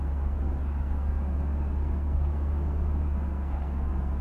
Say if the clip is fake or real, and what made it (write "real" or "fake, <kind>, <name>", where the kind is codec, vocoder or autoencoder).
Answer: fake, codec, SNAC